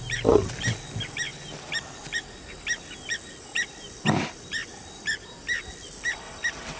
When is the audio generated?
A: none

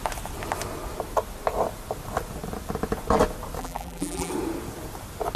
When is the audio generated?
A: 3.6-4.3

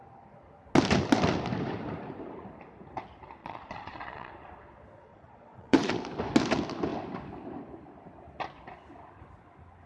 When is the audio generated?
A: 3.4-4.3; 5.1-5.9

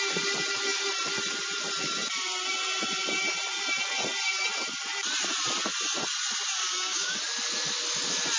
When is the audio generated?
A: 6.6-7.2

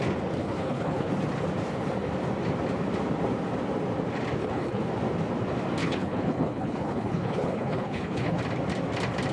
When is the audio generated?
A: 0.4-1.1; 4.4-4.9; 5.8-8.4

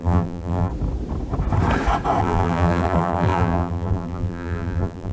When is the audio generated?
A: 0.0-0.7; 2.2-5.1

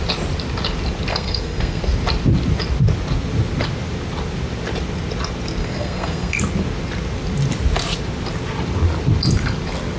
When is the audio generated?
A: 1.1-1.8; 5.6-6.4